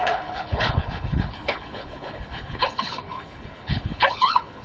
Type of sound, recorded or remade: remade